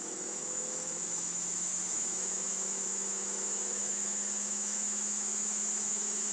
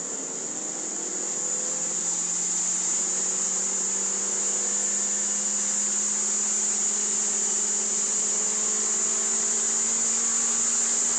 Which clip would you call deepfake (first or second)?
first